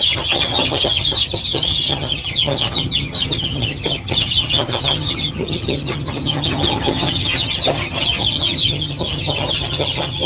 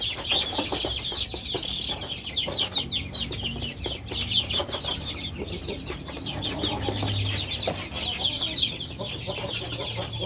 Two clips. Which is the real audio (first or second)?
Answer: second